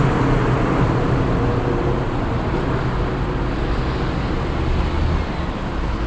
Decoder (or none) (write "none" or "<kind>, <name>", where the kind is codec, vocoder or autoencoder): none